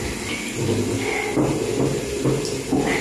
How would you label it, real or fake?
real